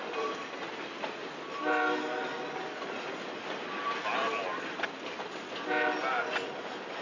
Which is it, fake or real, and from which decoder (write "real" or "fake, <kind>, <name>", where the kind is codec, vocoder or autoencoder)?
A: real